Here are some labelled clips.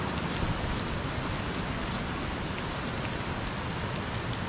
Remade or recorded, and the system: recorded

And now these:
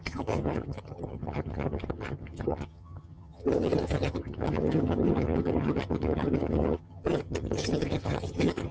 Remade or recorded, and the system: remade, vocoder, HiFi-GAN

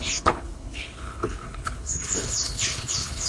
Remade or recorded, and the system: remade, codec, HILCodec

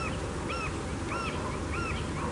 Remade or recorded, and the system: recorded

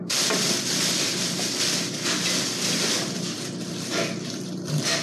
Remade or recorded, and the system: remade, vocoder, BigVGAN v2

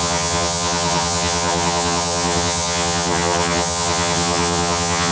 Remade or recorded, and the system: remade, vocoder, HiFi-GAN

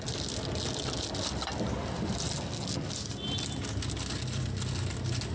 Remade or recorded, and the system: recorded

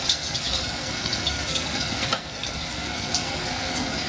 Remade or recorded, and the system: remade, codec, SNAC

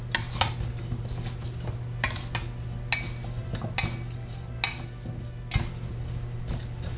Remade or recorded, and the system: recorded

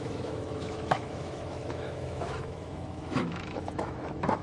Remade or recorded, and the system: remade, autoencoder, DAC-VAE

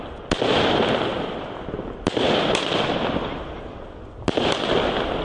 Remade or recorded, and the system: recorded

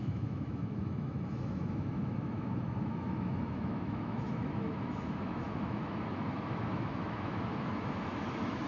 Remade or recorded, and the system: remade, autoencoder, DAC-VAE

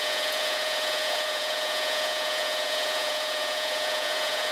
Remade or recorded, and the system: remade, vocoder, Vocos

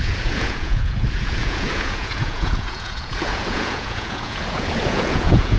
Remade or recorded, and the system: remade, vocoder, Vocos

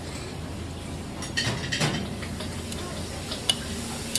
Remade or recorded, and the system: recorded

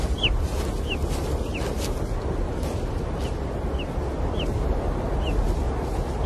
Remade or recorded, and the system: recorded